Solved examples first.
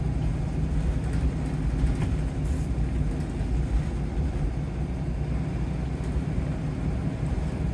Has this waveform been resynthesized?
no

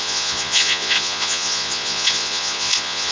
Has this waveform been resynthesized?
yes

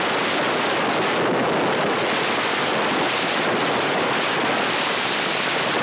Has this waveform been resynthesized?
no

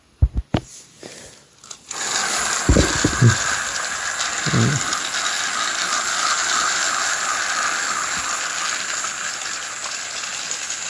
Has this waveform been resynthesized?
no